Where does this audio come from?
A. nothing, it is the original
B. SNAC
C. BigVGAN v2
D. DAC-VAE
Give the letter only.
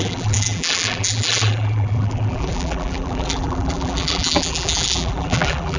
C